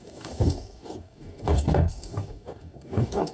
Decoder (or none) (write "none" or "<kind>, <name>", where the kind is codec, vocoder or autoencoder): codec, DAC